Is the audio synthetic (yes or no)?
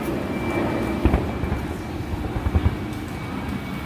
no